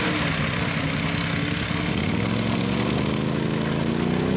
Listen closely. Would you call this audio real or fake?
real